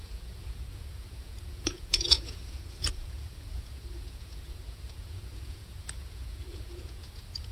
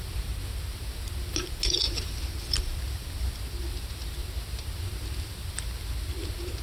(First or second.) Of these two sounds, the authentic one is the second